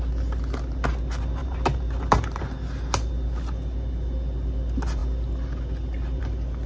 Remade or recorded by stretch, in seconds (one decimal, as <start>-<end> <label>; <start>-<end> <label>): 0.0-1.4 recorded; 1.4-2.4 remade; 2.4-6.7 recorded